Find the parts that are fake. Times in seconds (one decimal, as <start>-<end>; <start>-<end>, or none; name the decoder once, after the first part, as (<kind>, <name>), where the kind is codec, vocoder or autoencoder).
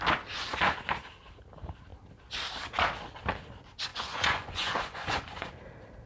3.9-5.5 (vocoder, Vocos)